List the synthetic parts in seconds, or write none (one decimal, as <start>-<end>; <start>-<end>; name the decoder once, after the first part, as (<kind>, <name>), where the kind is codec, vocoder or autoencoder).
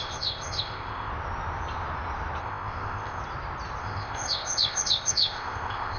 0.0-1.1 (codec, ZipCodec); 2.4-3.2; 3.8-6.0